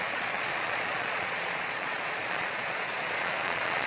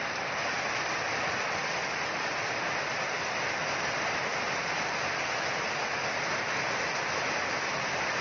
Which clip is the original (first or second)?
second